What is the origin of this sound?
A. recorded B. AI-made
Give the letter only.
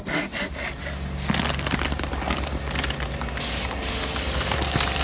A